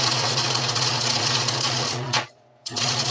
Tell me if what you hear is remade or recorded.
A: remade